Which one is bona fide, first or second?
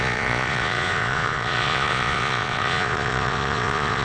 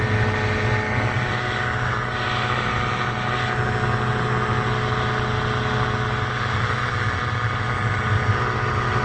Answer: second